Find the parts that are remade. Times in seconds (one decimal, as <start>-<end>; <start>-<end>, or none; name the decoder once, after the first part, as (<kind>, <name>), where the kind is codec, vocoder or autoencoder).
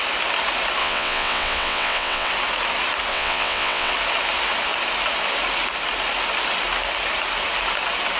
0.8-2.3 (vocoder, WaveNeXt); 3.1-3.9